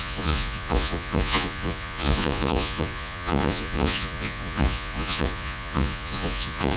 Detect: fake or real fake